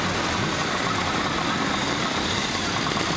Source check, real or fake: real